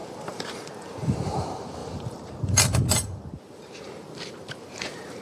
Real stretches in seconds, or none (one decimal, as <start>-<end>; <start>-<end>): none